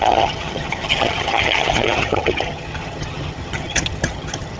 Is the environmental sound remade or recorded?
remade